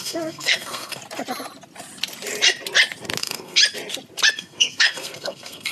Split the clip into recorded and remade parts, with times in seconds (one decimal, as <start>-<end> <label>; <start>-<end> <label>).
0.0-1.0 remade; 1.0-3.2 recorded; 3.2-3.6 remade; 3.6-4.3 recorded; 4.3-5.7 remade